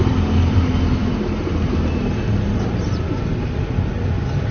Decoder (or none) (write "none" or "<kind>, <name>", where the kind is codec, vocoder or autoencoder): none